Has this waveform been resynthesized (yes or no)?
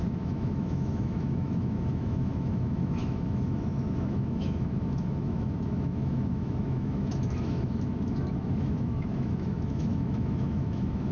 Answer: yes